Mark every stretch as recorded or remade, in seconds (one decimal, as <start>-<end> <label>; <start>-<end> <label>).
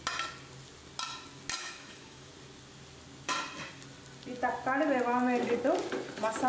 0.0-1.6 recorded; 1.6-2.3 remade; 2.3-6.5 recorded